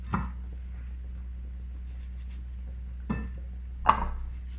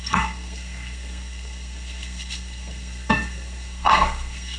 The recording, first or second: first